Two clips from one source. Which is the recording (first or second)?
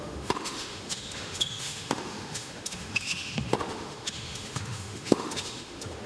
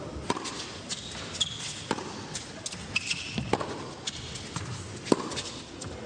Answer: second